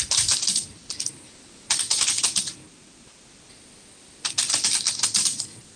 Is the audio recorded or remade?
recorded